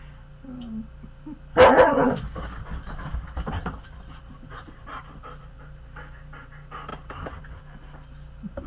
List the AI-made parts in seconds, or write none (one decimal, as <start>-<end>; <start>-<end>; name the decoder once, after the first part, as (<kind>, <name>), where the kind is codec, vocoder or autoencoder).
3.1-5.6 (vocoder, BigVGAN v2); 6.9-7.4